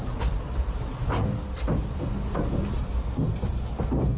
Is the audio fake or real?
real